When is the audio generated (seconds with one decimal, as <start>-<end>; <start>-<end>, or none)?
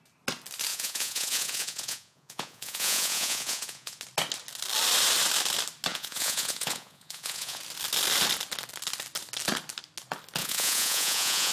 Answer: 0.7-4.0; 5.9-7.6; 10.4-11.5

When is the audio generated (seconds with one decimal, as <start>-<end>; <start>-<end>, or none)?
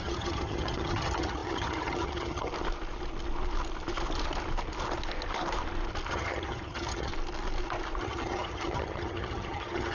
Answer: 0.0-2.5; 6.1-7.1; 8.0-9.9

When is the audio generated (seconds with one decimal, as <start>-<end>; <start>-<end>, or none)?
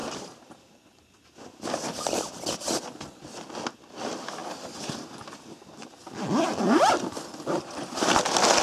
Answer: 0.0-1.4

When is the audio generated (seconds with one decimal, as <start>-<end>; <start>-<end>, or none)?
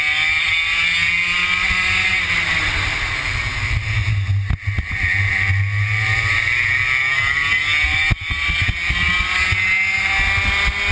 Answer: none